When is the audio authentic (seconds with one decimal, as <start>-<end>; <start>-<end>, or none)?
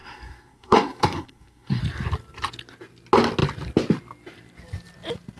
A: 1.8-5.4